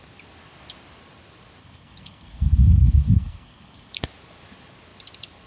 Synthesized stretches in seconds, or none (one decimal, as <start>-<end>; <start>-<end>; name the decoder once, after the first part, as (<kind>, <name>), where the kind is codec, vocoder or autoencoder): 1.6-3.9 (codec, SNAC)